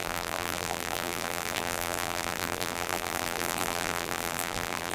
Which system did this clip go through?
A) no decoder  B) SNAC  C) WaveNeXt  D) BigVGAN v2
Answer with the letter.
D